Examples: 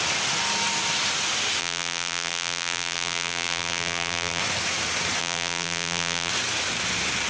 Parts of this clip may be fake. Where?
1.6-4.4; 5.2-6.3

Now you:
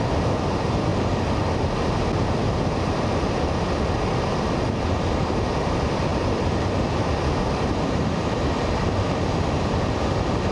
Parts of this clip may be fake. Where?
0.0-0.9; 4.6-10.5

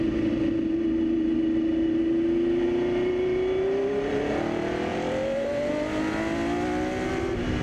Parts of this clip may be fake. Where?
4.9-5.7

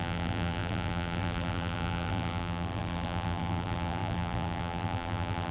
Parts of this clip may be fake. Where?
0.0-5.5

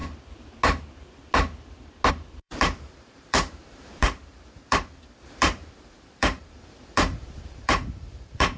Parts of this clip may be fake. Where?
2.1-8.6